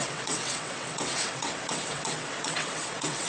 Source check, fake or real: fake